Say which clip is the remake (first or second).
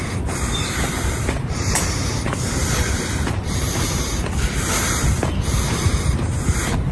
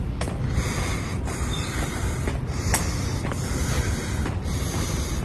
first